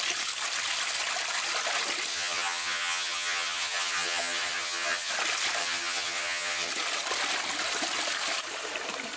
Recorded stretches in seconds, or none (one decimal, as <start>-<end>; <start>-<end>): 0.0-2.1; 5.1-5.6; 6.7-9.2